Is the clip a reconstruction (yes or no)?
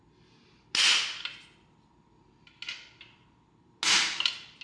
no